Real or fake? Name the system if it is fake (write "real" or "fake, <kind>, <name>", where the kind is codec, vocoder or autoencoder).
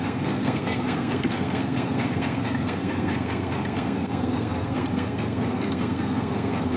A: fake, codec, SNAC